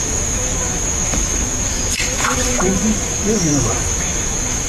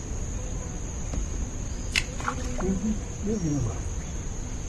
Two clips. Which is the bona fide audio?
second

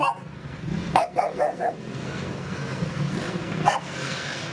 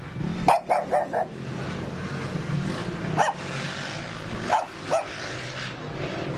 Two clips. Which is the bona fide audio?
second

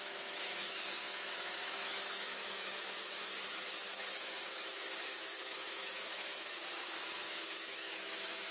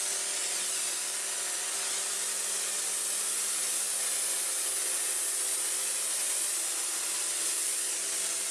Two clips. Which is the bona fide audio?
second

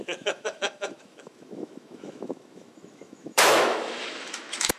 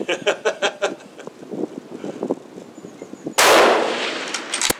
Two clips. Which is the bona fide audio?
second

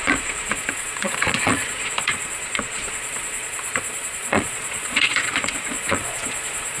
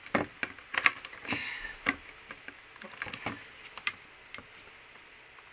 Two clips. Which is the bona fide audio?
second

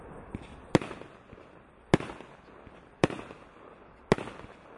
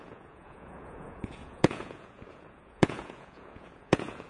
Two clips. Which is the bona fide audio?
first